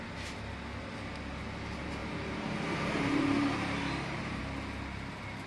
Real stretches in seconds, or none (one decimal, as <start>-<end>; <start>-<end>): 0.0-2.0; 4.4-5.5